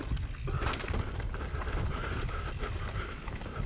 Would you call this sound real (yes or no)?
yes